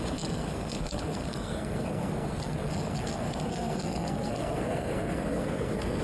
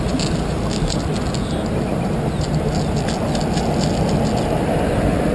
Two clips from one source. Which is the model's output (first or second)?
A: first